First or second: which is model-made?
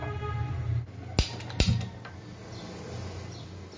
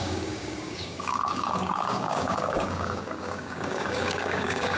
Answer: second